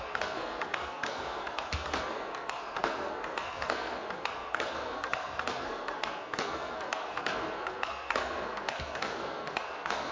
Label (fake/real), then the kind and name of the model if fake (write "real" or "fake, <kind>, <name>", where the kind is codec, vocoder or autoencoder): fake, codec, SNAC